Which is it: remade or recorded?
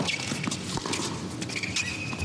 recorded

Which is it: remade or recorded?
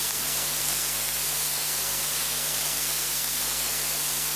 remade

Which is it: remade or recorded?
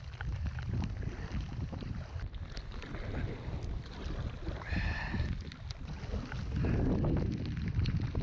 recorded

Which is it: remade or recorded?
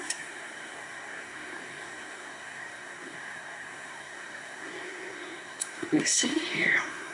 remade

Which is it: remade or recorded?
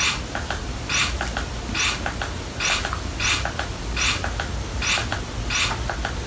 recorded